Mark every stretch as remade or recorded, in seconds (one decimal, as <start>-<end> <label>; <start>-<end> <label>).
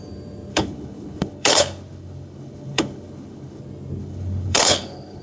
0.0-0.5 recorded; 0.5-3.6 remade; 3.6-4.0 recorded; 4.0-5.2 remade